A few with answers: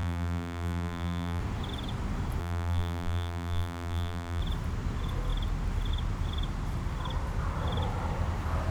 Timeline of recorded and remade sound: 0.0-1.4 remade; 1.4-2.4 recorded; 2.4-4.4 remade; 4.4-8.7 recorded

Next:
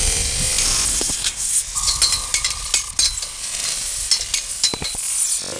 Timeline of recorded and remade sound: 0.0-0.9 recorded; 0.9-1.6 remade; 1.6-5.6 recorded

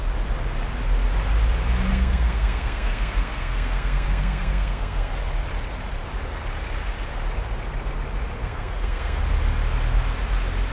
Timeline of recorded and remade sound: 0.0-1.9 recorded; 1.9-5.1 remade; 5.1-8.4 recorded; 8.4-9.2 remade; 9.2-10.7 recorded

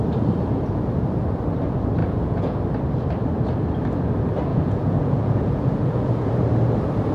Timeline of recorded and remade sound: 0.0-2.0 recorded; 2.0-2.6 remade; 2.6-4.5 recorded; 4.5-6.3 remade; 6.3-7.1 recorded

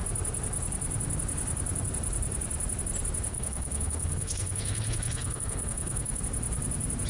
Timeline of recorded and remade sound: 0.0-3.3 recorded; 3.3-6.2 remade; 6.2-7.1 recorded

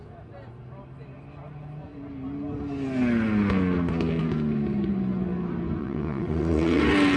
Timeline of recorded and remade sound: 0.0-5.8 recorded; 5.8-6.8 remade; 6.8-7.2 recorded

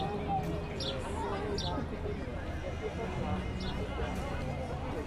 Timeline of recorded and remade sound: 0.0-5.1 recorded